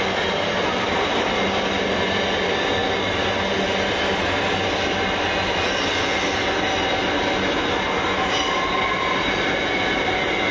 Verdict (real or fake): real